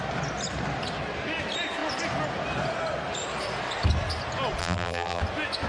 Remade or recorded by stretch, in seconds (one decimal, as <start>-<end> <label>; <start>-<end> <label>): 0.0-4.6 recorded; 4.6-5.2 remade; 5.2-5.7 recorded

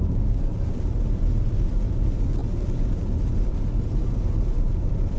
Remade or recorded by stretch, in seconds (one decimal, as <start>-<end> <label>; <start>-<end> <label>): 0.0-5.2 recorded